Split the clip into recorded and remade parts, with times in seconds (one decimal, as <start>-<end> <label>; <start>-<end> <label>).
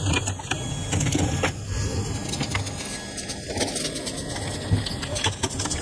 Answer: 0.0-5.8 recorded